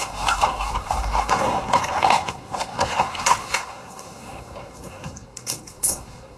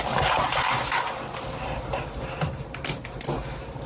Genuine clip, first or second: second